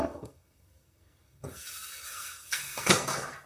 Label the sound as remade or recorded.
remade